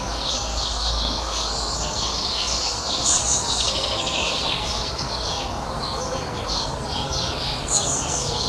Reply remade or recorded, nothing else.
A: remade